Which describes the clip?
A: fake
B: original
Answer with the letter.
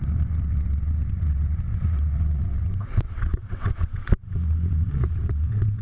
A